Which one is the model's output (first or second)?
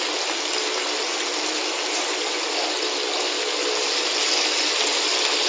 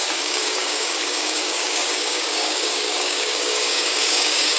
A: second